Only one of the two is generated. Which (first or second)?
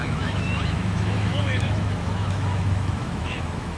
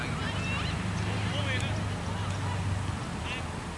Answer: first